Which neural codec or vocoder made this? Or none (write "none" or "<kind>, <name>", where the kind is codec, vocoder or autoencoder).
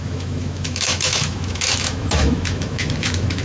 autoencoder, DAC-VAE